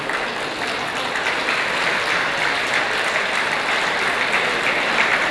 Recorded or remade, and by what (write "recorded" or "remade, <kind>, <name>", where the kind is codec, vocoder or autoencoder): recorded